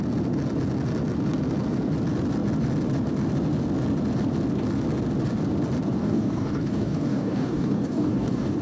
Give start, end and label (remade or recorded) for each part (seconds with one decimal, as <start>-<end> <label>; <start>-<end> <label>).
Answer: 0.0-6.0 recorded; 6.0-8.6 remade